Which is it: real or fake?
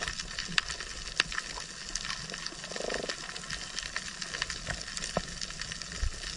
real